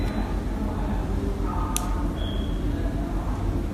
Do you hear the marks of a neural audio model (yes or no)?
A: no